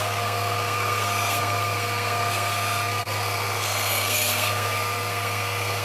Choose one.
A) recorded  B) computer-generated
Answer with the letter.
B